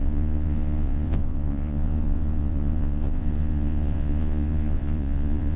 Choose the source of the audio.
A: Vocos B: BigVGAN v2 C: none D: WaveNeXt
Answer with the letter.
A